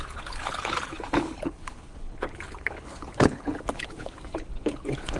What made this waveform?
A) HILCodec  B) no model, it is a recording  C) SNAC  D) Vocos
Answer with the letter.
A